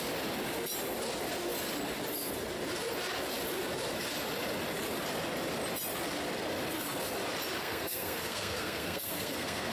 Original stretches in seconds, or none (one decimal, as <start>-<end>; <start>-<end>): 0.0-7.6